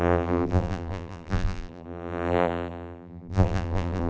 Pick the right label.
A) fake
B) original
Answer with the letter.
A